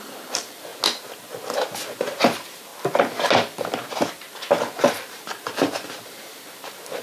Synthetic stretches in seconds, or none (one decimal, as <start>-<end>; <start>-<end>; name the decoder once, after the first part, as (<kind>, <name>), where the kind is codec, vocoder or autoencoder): 0.0-0.7 (vocoder, BigVGAN v2); 1.9-2.7; 4.9-7.0